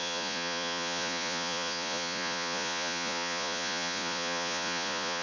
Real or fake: fake